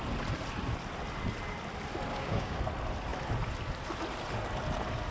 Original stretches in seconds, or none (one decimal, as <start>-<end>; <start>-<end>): 0.0-2.1; 2.6-5.1

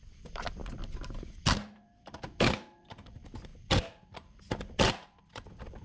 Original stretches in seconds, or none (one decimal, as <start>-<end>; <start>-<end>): 0.0-5.8

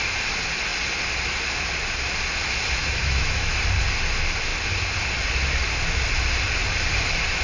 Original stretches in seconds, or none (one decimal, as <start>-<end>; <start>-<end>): 0.0-2.8; 3.5-7.4

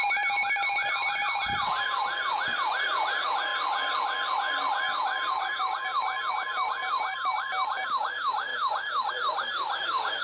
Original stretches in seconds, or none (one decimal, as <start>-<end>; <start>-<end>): 3.5-6.3; 8.5-9.1

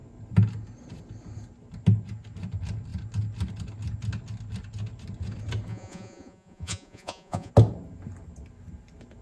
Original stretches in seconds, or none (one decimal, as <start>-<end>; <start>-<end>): 0.0-5.7; 7.5-9.2

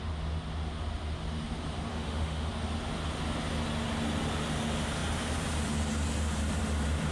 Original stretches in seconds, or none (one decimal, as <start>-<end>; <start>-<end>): 0.0-1.9; 2.5-7.1

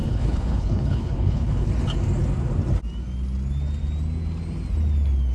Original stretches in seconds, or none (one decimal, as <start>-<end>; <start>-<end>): 1.7-5.3

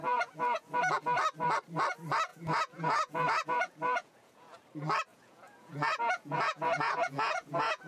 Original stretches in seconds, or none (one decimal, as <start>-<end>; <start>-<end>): 0.8-2.3; 4.6-5.1